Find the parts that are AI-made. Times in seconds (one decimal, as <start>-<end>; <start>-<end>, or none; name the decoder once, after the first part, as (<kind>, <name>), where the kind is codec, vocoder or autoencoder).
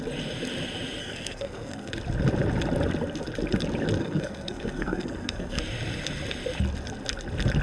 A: 1.0-1.9 (codec, SNAC); 4.0-5.6